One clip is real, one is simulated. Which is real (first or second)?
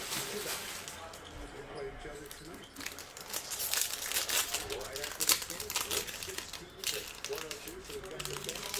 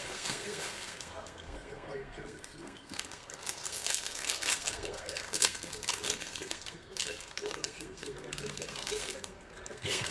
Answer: first